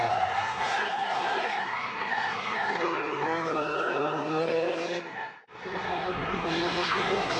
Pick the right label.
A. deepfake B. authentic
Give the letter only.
A